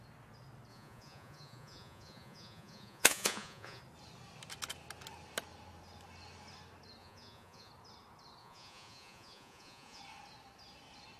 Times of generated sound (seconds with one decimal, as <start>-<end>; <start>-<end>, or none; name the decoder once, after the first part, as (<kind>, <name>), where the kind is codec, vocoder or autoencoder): 0.7-3.8 (vocoder, Vocos); 7.0-7.7; 8.4-10.0